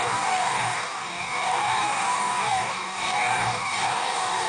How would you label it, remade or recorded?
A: remade